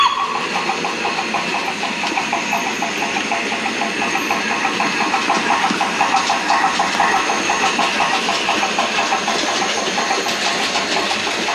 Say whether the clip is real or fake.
real